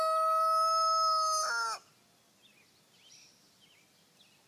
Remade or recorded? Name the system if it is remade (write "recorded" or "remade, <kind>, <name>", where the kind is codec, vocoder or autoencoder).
recorded